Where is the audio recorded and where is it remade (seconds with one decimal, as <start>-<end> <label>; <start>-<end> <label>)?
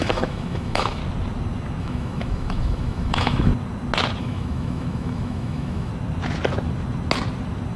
0.0-1.0 remade; 1.0-1.8 recorded; 1.8-3.5 remade; 3.5-4.2 recorded; 4.2-5.9 remade; 5.9-7.8 recorded